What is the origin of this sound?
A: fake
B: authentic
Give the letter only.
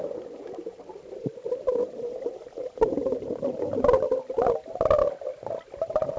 B